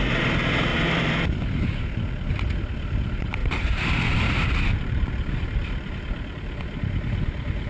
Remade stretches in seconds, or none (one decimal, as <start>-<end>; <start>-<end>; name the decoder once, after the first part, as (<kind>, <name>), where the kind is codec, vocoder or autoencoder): 3.4-5.1 (vocoder, BigVGAN v2)